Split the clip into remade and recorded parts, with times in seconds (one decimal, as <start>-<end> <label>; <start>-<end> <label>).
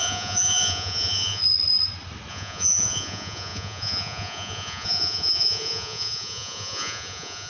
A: 0.0-1.4 remade; 1.4-2.3 recorded; 2.3-7.5 remade